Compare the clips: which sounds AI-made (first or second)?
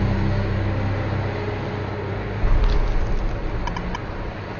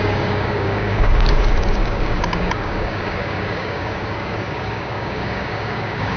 second